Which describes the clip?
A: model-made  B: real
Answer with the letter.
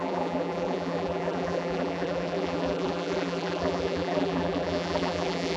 A